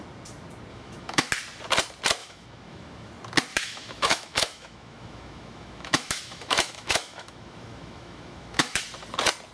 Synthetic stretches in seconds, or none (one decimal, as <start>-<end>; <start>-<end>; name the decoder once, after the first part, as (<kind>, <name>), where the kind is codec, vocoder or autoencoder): 0.7-1.3 (autoencoder, DAC-VAE); 2.2-3.1; 3.5-8.8